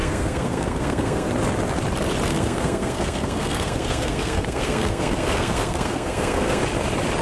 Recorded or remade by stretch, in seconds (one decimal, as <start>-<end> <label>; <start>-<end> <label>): 0.0-1.3 remade; 1.3-2.3 recorded; 2.3-6.6 remade; 6.6-7.2 recorded